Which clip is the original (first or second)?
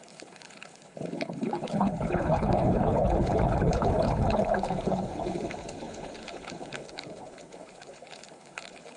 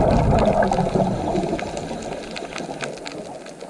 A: second